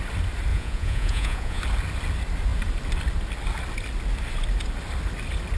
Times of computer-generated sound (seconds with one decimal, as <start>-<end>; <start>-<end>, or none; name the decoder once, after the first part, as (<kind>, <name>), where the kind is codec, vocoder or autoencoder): 0.5-1.6 (vocoder, Vocos)